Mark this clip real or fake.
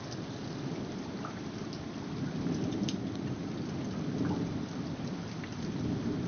real